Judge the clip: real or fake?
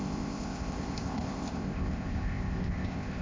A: fake